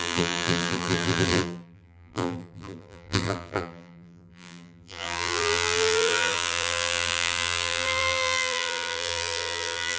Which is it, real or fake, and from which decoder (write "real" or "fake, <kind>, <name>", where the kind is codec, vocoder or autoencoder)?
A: fake, vocoder, BigVGAN v2